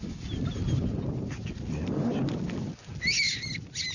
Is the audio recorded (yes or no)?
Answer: yes